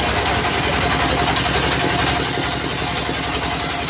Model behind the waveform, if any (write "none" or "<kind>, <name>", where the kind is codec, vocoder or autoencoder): none